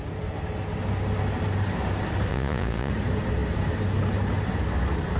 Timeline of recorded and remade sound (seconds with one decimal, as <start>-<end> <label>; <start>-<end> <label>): 0.0-2.3 recorded; 2.3-2.9 remade; 2.9-5.2 recorded